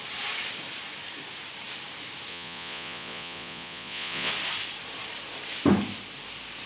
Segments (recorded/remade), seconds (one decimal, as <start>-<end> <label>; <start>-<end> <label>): 0.0-2.3 recorded; 2.3-4.3 remade; 4.3-6.7 recorded